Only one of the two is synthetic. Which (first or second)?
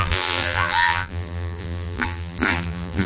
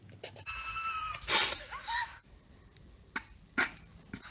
first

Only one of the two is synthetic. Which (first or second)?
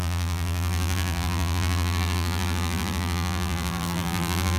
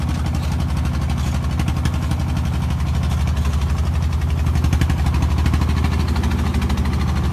first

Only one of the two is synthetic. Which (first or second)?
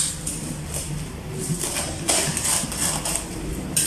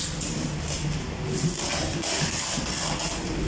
first